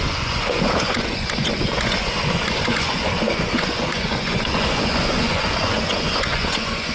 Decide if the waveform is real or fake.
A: fake